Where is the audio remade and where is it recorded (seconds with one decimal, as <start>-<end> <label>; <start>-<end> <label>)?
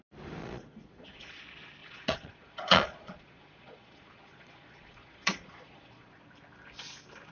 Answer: 0.0-0.4 recorded; 0.4-1.4 remade; 1.4-1.8 recorded; 1.8-6.2 remade; 6.2-7.3 recorded